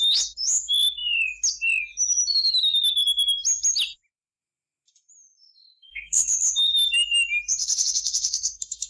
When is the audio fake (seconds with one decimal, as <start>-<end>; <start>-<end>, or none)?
5.7-6.3; 7.6-8.9